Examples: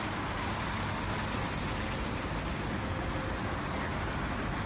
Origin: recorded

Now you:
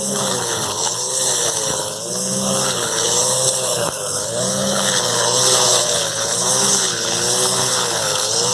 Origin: remade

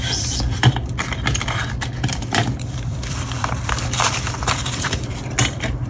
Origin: remade